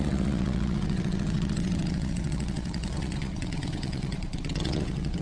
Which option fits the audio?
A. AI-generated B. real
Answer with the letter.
A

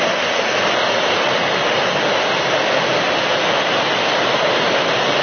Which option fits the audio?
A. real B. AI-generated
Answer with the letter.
A